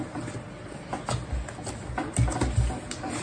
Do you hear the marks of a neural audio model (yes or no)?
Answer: no